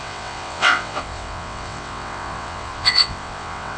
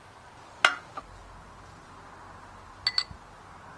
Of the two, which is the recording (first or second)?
second